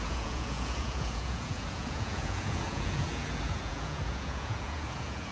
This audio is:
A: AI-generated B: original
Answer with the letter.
A